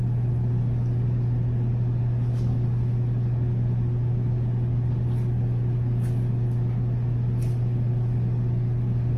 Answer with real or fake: real